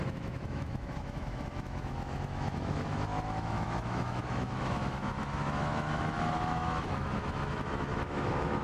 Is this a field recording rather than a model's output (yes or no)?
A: no